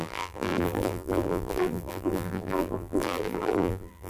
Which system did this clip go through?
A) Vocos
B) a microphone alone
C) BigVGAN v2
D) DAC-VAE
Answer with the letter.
C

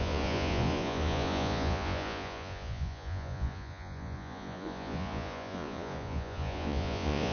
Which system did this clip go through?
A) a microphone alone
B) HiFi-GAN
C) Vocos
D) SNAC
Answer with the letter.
C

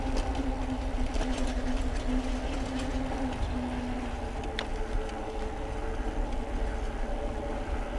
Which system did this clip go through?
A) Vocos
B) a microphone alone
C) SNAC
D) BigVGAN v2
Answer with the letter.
B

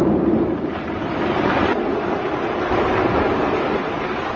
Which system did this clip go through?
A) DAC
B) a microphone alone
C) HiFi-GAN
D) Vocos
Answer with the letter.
B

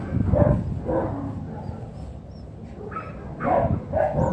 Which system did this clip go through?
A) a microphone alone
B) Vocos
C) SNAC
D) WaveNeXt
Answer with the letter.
A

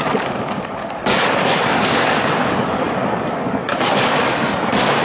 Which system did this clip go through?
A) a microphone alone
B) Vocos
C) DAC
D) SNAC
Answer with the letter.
C